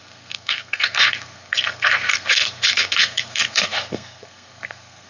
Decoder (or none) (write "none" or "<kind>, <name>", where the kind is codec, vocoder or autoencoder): codec, SNAC